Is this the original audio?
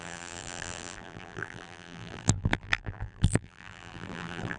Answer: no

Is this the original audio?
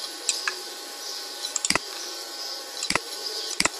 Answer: no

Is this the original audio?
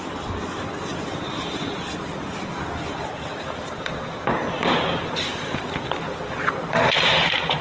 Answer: no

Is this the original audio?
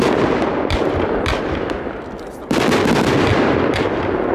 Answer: yes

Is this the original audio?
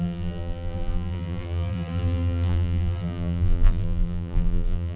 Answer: no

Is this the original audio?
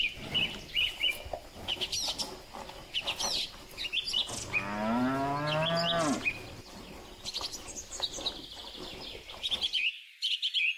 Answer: yes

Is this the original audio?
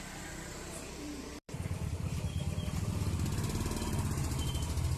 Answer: no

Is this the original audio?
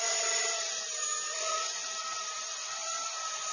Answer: no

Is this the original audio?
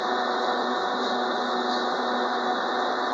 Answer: yes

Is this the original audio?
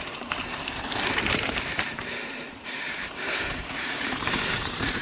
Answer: no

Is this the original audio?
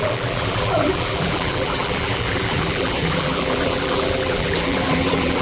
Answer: no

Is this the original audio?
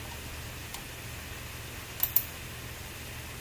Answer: yes